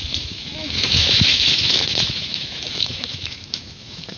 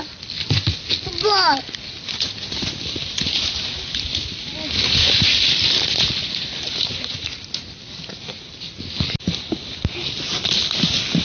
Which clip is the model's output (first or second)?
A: first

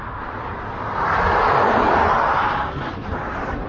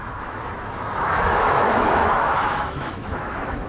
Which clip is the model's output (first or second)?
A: second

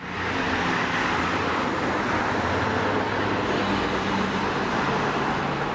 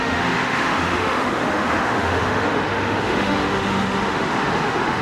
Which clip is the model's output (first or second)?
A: second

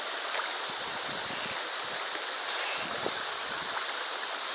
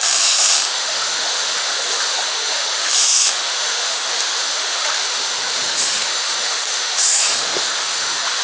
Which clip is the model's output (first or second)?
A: second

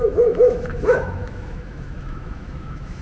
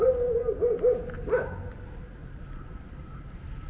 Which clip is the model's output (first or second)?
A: first